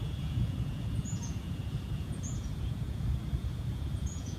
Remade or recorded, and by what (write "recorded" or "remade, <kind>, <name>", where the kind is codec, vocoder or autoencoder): remade, vocoder, Vocos